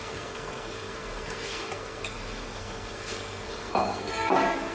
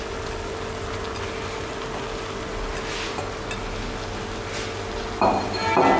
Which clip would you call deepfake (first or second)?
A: first